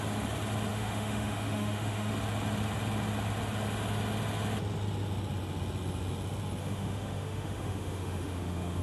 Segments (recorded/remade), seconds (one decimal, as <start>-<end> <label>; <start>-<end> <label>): 0.0-0.7 recorded; 0.7-2.1 remade; 2.1-6.6 recorded; 6.6-8.8 remade